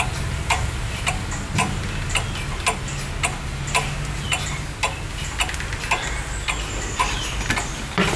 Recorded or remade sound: recorded